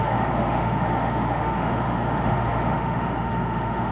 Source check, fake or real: fake